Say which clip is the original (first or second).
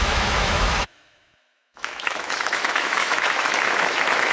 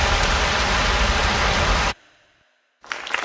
second